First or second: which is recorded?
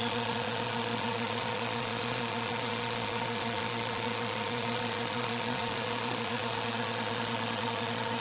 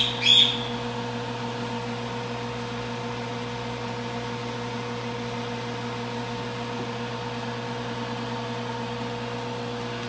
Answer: second